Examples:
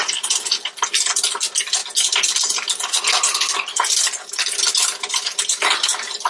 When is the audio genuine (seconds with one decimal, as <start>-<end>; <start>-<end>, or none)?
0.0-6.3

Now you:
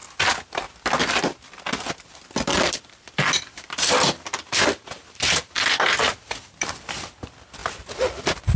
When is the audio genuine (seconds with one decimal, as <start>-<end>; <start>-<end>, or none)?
0.0-2.5; 7.1-8.6

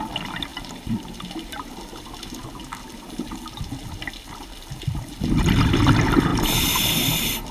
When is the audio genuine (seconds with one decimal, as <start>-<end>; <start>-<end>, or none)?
0.0-7.5

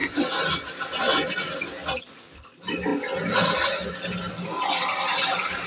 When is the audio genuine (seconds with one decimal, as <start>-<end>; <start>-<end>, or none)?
0.0-2.0; 2.9-5.7

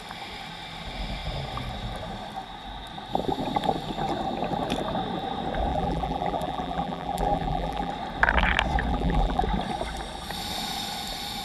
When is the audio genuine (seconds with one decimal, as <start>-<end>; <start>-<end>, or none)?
0.0-5.7; 7.9-8.9; 9.4-11.4

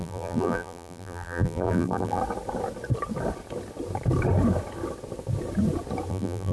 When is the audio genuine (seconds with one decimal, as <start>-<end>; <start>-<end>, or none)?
2.2-6.1

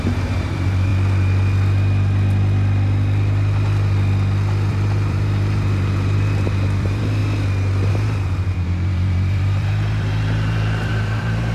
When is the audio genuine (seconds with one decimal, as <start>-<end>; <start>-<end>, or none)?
0.9-4.7; 7.2-7.9